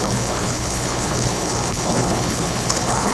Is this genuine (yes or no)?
no